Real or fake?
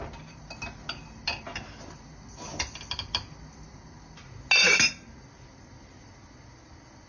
real